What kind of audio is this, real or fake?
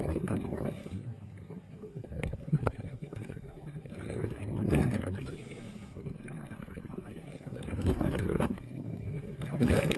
fake